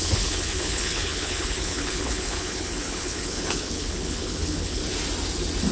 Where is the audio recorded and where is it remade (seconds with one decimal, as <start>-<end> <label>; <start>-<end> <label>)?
0.0-4.8 remade; 4.8-5.7 recorded